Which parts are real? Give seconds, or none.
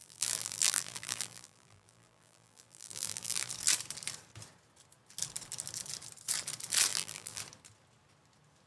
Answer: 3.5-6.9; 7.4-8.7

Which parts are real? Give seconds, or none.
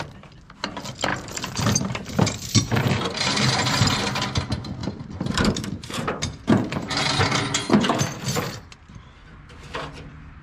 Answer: 0.0-1.1; 3.8-4.8; 7.2-10.4